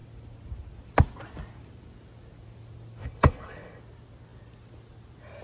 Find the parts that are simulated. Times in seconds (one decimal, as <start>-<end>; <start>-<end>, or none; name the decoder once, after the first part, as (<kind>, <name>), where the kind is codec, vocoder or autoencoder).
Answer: 3.0-3.8 (codec, HILCodec)